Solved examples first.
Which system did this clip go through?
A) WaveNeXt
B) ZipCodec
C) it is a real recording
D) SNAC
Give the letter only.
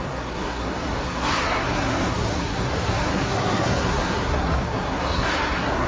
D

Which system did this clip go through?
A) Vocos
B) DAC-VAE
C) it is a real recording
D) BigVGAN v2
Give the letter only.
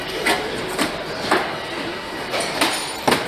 C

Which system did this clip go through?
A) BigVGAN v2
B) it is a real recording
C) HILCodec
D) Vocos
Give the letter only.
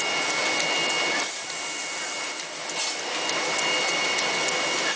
B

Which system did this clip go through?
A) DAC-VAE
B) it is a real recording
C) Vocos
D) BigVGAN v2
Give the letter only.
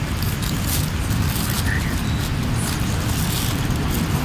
B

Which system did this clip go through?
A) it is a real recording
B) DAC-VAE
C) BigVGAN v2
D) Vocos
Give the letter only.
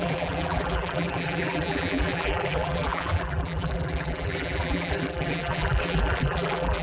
C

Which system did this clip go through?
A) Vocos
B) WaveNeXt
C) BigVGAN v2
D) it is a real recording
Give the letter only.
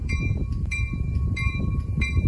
C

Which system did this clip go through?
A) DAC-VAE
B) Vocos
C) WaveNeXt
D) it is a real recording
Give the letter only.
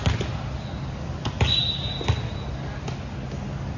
D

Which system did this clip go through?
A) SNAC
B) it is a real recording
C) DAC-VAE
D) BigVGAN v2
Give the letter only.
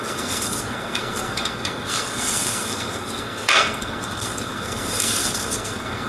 A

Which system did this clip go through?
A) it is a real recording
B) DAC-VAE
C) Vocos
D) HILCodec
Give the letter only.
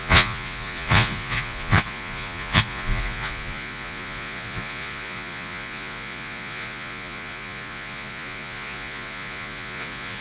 C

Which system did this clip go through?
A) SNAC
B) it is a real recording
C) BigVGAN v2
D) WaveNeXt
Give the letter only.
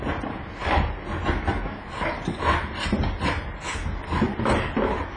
B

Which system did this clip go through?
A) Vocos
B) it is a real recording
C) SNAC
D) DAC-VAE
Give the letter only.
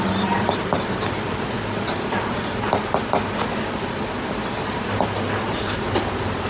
B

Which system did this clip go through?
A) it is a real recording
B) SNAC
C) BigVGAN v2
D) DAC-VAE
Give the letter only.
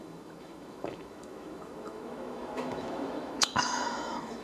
D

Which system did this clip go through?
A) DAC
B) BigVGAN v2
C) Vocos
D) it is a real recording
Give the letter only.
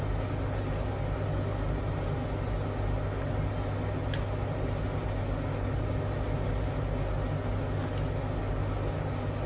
D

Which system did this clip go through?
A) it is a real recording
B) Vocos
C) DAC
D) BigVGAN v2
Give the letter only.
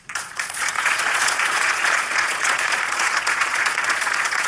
B